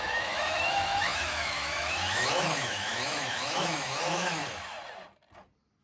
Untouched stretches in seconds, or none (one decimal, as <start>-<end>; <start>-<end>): 4.4-5.8